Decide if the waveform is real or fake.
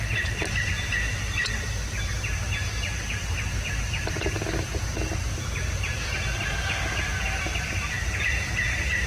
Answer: real